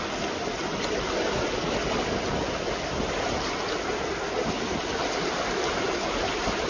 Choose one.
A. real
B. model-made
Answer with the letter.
A